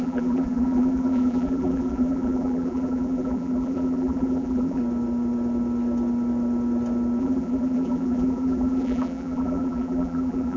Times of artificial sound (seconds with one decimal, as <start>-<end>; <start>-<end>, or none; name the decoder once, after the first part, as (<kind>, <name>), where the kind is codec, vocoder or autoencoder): 0.0-4.8 (vocoder, BigVGAN v2); 7.2-10.6